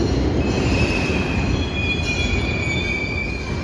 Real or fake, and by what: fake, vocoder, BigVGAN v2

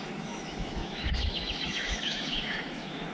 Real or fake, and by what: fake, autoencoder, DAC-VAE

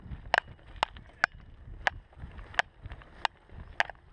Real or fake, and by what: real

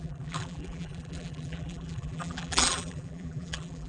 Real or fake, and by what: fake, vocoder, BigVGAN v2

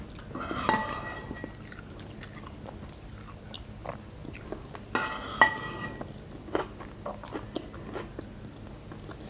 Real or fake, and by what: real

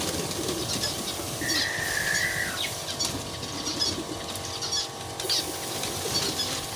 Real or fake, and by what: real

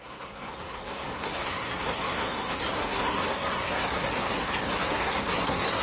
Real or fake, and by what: fake, codec, SNAC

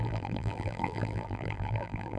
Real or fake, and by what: fake, vocoder, BigVGAN v2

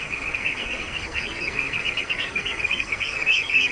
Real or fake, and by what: fake, codec, SNAC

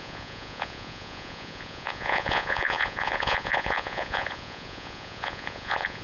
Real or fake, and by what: fake, vocoder, Vocos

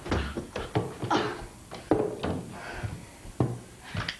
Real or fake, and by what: real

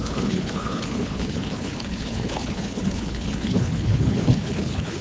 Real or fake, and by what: fake, codec, HILCodec